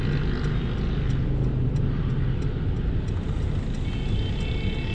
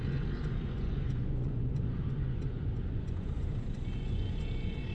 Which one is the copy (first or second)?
second